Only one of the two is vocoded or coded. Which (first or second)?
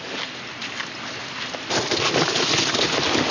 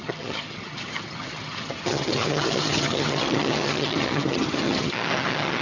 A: second